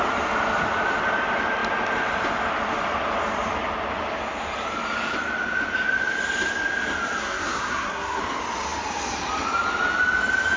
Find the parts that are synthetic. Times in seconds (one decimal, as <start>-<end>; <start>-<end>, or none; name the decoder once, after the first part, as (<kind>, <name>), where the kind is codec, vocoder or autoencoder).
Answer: 7.2-8.2 (codec, SNAC)